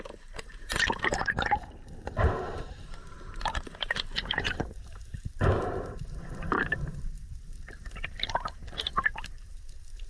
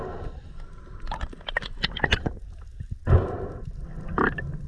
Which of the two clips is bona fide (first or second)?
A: second